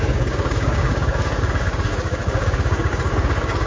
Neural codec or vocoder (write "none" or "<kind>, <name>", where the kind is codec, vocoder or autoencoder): codec, DAC